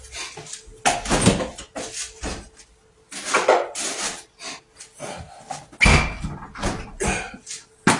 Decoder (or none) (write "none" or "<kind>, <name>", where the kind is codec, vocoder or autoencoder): none